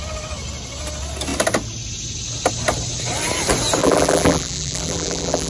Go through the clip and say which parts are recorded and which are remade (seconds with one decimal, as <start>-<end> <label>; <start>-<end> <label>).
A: 0.0-3.8 recorded; 3.8-5.5 remade